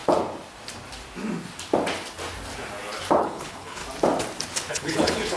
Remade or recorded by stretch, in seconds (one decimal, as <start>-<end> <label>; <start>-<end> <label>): 0.0-3.2 recorded; 3.2-3.8 remade; 3.8-4.7 recorded; 4.7-5.4 remade